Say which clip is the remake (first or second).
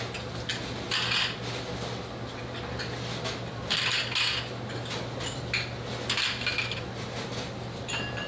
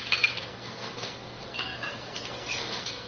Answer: second